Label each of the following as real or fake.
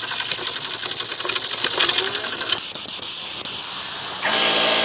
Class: real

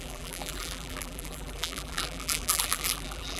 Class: fake